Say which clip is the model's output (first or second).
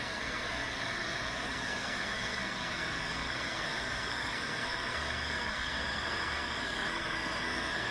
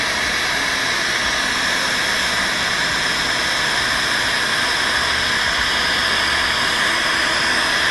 first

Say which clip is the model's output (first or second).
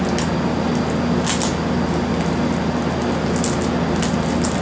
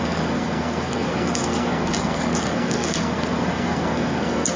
second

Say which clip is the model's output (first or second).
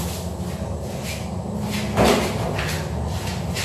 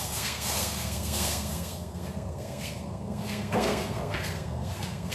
second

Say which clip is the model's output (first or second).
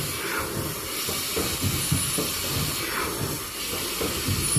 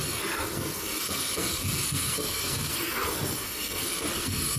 second